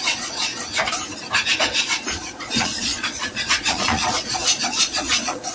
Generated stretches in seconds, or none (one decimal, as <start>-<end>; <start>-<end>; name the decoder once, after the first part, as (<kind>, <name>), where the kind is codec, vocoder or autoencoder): 0.0-0.5 (vocoder, Vocos); 1.6-5.5